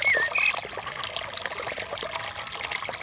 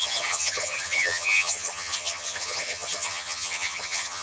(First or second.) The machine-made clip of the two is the second